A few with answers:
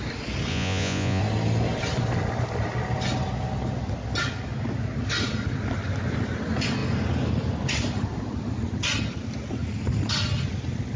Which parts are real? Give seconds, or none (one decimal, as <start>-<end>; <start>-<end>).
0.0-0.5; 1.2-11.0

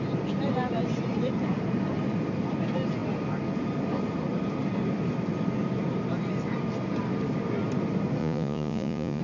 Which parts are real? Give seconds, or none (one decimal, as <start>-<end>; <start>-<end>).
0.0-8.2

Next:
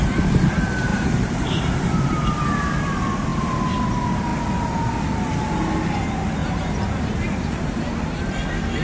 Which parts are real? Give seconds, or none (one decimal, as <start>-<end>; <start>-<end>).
0.0-0.9; 2.4-6.4; 8.2-8.8

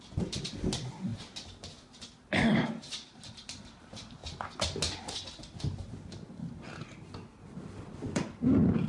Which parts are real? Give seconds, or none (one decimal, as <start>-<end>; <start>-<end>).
1.1-2.1; 4.2-6.5